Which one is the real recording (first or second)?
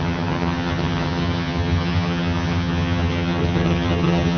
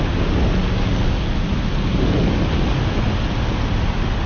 second